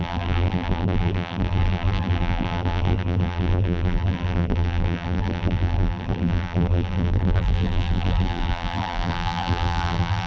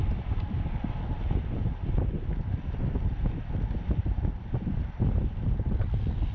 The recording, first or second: second